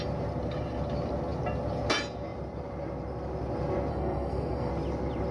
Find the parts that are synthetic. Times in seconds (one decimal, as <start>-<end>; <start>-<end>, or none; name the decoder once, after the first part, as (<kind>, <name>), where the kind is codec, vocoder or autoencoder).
3.9-4.7 (codec, SNAC)